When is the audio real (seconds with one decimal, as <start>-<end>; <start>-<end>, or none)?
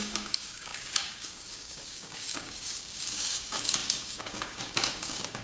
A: none